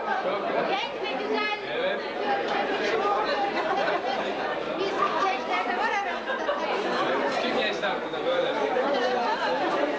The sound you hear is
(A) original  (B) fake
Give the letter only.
B